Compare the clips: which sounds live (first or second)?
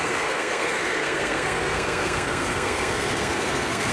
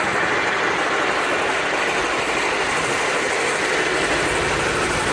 second